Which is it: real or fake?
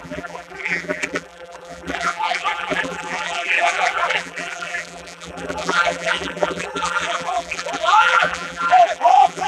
fake